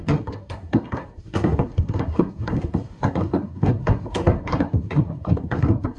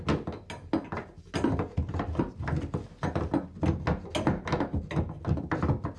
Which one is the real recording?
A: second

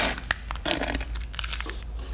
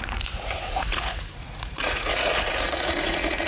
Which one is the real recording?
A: first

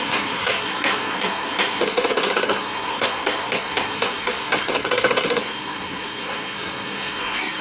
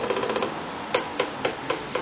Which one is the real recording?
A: second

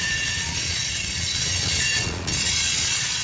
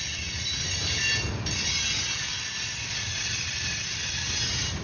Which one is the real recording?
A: second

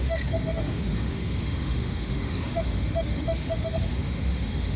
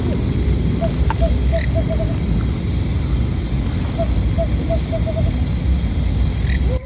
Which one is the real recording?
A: second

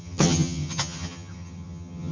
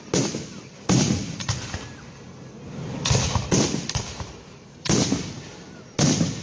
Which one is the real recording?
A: second